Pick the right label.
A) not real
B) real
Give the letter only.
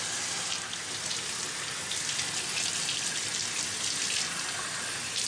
B